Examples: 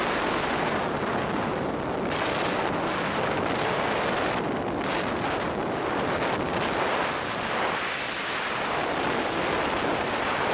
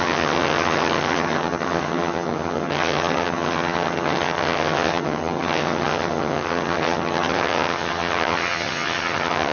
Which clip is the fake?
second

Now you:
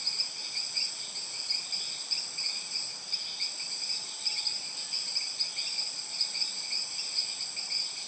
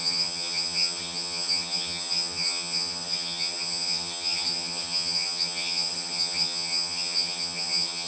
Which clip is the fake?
second